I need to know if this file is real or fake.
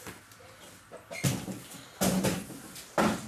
real